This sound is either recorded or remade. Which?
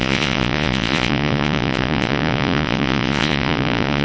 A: remade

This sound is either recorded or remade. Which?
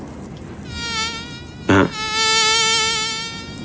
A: recorded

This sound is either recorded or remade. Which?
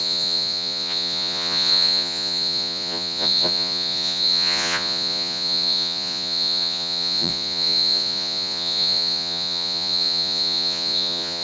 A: remade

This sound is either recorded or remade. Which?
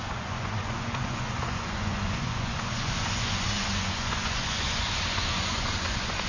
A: remade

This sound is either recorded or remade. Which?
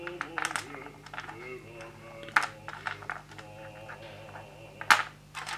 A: recorded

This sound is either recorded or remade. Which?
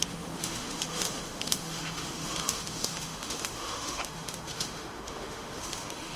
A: remade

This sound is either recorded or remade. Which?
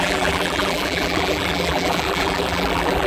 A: remade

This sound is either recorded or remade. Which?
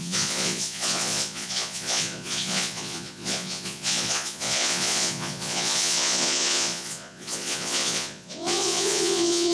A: remade